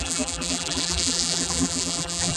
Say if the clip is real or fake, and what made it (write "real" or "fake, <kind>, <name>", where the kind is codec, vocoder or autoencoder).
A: fake, vocoder, BigVGAN v2